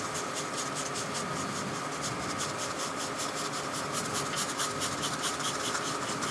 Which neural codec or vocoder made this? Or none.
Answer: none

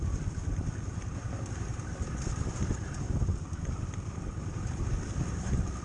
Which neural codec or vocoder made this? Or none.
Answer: none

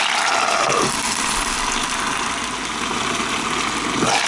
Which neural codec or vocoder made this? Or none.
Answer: none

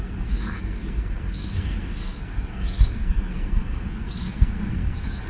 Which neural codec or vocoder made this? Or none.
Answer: codec, SNAC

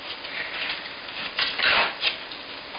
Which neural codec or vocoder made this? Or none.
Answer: none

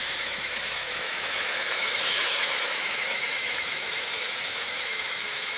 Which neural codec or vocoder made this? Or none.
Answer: autoencoder, DAC-VAE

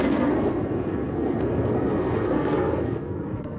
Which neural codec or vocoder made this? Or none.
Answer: codec, SNAC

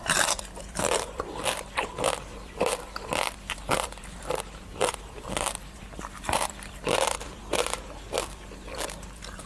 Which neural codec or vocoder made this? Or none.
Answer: vocoder, BigVGAN v2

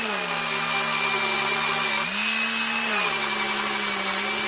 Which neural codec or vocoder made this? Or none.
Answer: none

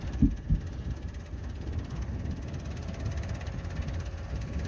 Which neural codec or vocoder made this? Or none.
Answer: none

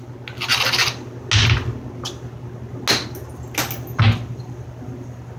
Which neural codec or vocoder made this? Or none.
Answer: none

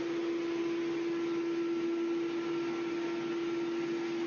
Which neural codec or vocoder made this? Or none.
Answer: none